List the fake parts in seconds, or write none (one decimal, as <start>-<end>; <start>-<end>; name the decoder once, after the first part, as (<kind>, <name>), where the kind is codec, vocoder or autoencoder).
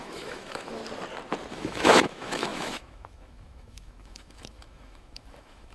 0.0-0.8 (autoencoder, DAC-VAE); 1.5-5.7